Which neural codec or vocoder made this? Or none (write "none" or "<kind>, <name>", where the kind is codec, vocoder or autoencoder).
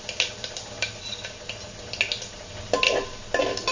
none